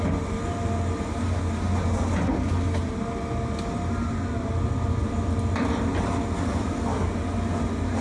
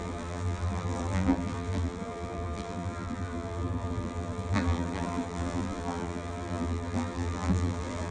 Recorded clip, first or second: first